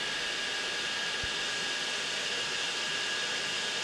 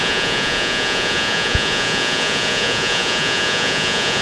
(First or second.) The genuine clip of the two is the first